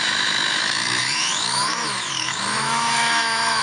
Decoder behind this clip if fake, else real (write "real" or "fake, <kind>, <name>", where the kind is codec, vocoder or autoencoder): fake, autoencoder, DAC-VAE